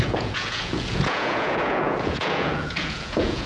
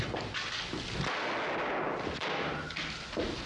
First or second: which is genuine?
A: second